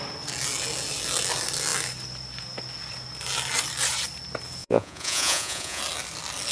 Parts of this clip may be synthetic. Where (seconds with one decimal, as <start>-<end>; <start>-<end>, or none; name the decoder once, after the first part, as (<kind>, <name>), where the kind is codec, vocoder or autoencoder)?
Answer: 4.6-5.8 (vocoder, Vocos)